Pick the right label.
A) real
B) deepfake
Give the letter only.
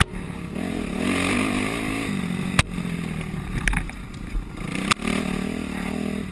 A